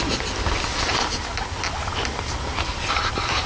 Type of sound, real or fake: real